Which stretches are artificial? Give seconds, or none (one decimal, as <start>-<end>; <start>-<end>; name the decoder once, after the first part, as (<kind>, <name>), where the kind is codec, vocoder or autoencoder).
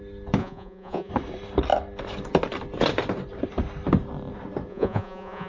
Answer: 0.4-1.1 (vocoder, Vocos); 4.7-5.5